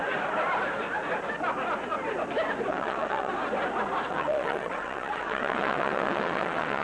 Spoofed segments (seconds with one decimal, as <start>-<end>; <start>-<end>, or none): 2.7-3.3; 4.1-6.8